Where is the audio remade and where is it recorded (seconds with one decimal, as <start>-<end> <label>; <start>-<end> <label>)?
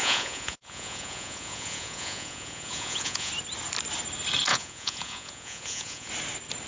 0.0-3.3 remade; 3.3-4.5 recorded; 4.5-6.1 remade; 6.1-6.7 recorded